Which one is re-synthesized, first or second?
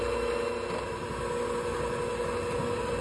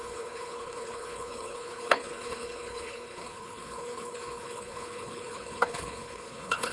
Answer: second